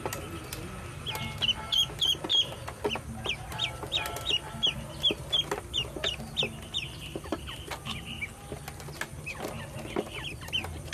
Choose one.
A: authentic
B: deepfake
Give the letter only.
A